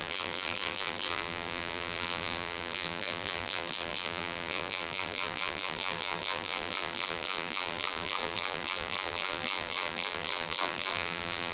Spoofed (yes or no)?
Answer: yes